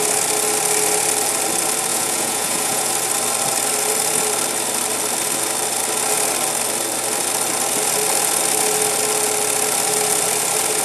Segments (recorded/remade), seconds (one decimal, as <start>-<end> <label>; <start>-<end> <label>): 0.0-1.9 recorded; 1.9-2.9 remade; 2.9-10.8 recorded